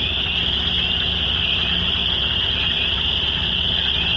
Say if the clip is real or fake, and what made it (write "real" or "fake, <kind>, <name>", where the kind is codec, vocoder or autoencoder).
real